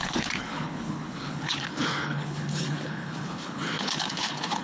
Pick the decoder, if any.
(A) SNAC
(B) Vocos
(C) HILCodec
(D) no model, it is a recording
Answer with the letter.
C